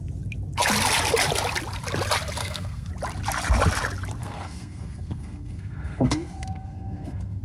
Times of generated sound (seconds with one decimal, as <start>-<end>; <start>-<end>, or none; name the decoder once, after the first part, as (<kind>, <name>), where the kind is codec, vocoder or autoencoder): 2.4-2.9 (codec, SNAC); 4.2-7.4